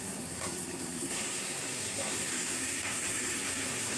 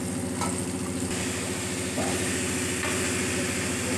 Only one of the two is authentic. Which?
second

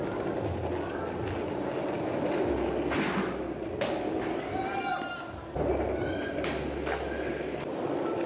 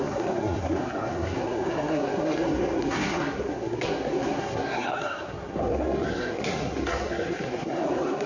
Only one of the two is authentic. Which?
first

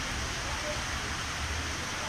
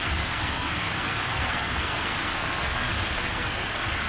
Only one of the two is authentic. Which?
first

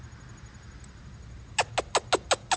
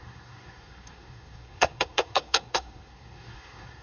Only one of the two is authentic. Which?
first